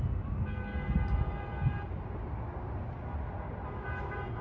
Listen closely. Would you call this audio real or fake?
real